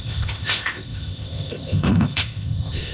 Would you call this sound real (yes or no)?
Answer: no